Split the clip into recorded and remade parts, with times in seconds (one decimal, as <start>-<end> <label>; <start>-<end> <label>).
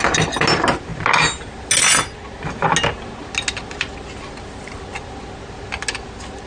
0.0-6.5 recorded